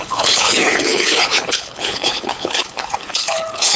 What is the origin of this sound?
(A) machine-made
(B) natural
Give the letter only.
A